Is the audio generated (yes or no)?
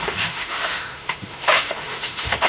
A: yes